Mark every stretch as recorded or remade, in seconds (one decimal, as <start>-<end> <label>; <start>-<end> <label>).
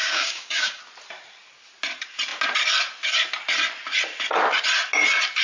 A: 0.0-0.8 remade; 0.8-5.4 recorded